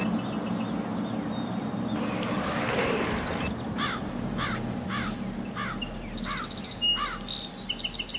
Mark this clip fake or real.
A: real